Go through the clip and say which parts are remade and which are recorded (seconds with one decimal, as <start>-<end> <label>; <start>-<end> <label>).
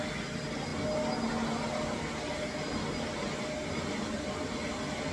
0.0-5.1 recorded